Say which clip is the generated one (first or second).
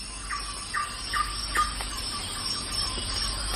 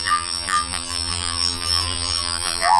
second